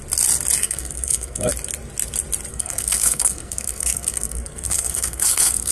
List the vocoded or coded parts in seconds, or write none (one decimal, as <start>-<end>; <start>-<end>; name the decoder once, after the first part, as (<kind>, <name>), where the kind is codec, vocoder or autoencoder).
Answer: 0.6-1.5 (codec, SNAC); 2.5-5.7